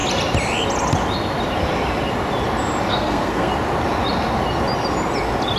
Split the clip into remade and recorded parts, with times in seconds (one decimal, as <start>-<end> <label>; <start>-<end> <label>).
0.0-2.9 recorded; 2.9-3.5 remade; 3.5-5.6 recorded